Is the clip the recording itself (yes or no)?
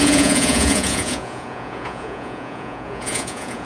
no